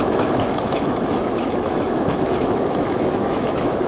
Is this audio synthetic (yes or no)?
yes